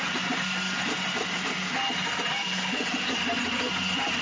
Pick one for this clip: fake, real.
real